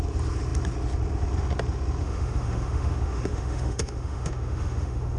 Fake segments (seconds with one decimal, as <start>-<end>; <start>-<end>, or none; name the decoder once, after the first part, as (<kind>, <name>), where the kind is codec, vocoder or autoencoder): 2.0-5.2 (autoencoder, DAC-VAE)